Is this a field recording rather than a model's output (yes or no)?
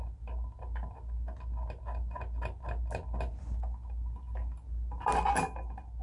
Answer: yes